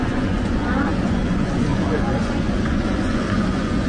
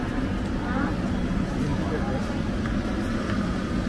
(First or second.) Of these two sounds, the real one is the second